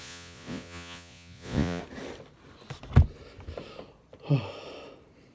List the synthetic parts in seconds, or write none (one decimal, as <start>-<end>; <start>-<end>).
0.0-1.8